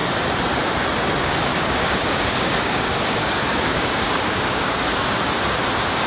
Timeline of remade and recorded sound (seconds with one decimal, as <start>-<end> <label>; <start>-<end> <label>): 0.0-1.5 recorded; 1.5-5.2 remade; 5.2-6.1 recorded